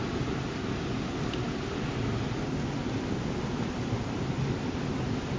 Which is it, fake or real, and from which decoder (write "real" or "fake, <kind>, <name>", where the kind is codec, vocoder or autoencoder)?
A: real